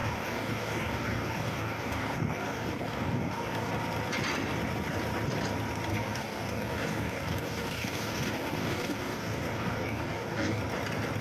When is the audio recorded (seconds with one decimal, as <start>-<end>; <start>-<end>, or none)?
3.7-5.9; 10.6-11.2